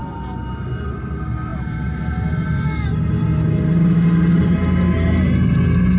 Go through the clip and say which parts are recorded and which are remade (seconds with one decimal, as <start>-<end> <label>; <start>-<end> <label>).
0.0-6.0 recorded